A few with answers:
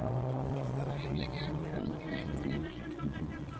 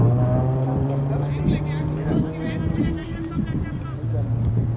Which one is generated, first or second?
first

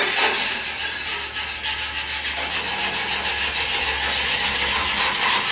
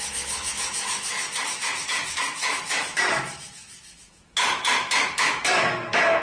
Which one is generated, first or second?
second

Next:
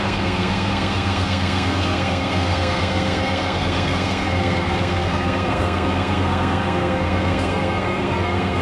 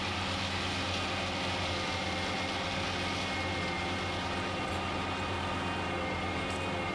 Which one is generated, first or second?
first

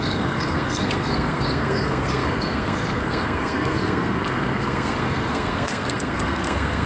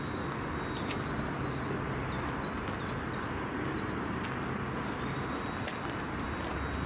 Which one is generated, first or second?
first